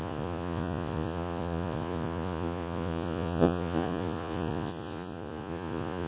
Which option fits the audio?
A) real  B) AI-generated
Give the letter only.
B